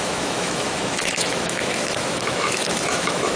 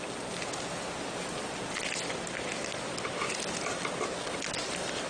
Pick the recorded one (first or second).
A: second